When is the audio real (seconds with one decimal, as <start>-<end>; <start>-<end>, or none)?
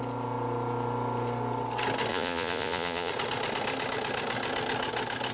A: 0.0-2.1; 3.1-5.3